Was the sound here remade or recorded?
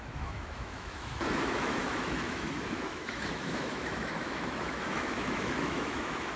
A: remade